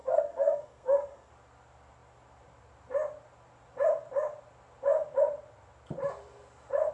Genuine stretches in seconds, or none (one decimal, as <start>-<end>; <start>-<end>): 1.3-6.9